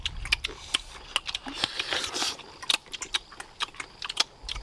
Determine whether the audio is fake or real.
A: real